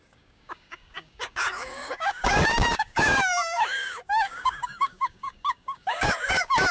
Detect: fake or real fake